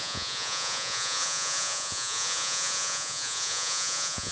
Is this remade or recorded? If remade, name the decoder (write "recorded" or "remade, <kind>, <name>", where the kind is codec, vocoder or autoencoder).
remade, vocoder, Vocos